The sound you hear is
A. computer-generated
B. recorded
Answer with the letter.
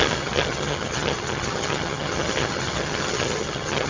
A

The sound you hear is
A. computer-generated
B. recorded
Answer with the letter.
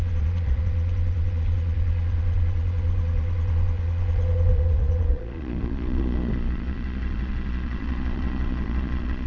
A